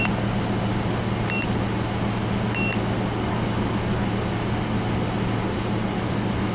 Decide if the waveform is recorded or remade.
recorded